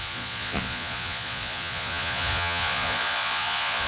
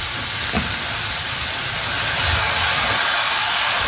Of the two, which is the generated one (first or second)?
first